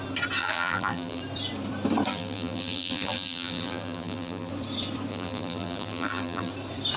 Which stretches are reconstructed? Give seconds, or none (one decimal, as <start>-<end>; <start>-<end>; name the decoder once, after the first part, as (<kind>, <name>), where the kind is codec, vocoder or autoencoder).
0.4-1.2 (vocoder, BigVGAN v2); 2.1-4.5; 5.1-6.5